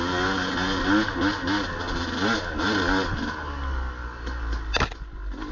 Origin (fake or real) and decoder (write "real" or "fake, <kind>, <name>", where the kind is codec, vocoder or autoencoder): real